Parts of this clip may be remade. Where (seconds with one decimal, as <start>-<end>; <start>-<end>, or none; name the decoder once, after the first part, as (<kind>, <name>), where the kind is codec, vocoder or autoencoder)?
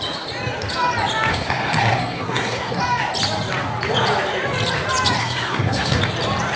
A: 1.3-2.8 (codec, SNAC); 5.2-6.0